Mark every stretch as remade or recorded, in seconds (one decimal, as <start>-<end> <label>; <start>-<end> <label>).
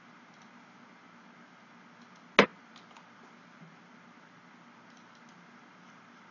0.0-6.3 recorded